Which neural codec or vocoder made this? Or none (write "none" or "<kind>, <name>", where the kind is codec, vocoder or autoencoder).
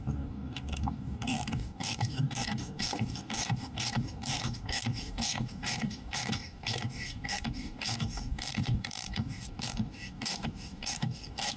codec, DAC